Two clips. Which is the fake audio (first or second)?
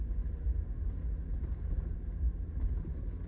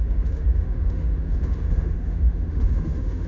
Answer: second